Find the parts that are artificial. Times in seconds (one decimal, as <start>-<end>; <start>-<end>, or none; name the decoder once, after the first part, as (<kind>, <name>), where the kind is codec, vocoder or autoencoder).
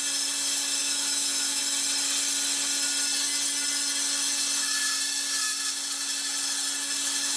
0.8-1.6 (autoencoder, DAC-VAE)